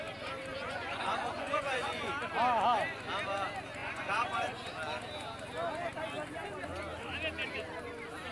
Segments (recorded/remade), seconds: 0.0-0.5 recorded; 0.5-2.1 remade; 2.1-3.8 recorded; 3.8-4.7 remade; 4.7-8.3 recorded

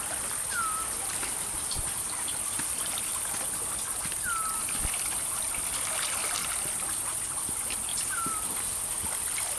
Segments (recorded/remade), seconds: 0.0-7.9 recorded; 7.9-8.5 remade; 8.5-9.6 recorded

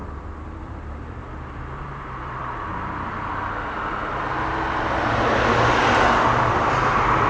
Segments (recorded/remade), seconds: 0.0-4.2 remade; 4.2-7.3 recorded

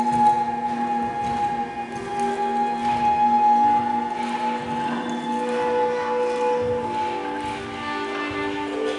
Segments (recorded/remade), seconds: 0.0-9.0 recorded

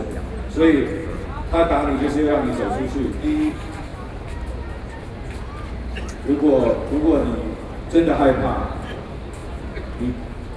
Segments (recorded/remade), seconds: 0.0-10.6 recorded

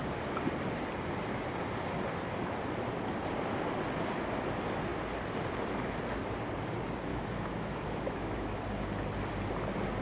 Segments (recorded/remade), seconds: 0.0-7.1 recorded; 7.1-8.6 remade; 8.6-10.0 recorded

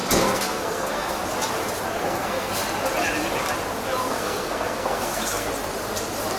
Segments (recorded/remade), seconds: 0.0-1.2 remade; 1.2-1.9 recorded; 1.9-2.5 remade; 2.5-4.0 recorded; 4.0-5.5 remade; 5.5-6.4 recorded